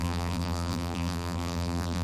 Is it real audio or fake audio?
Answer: fake